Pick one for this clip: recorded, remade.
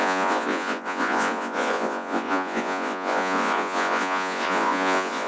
remade